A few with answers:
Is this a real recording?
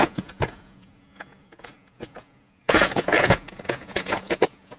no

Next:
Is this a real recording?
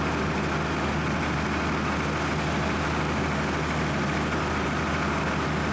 yes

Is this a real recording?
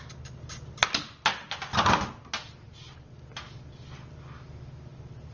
yes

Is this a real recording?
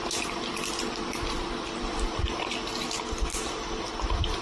yes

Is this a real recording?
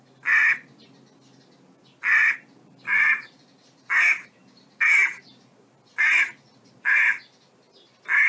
yes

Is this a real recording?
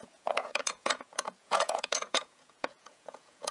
no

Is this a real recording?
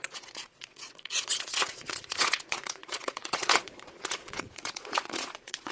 no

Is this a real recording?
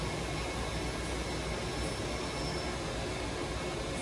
yes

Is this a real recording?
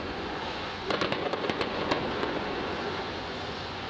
no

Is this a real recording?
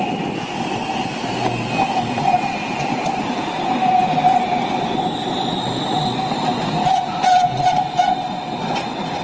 yes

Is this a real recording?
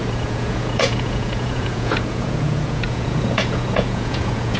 no